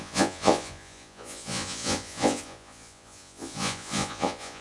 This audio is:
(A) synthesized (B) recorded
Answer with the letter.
A